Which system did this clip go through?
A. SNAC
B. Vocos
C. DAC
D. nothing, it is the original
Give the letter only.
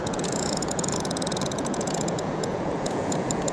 B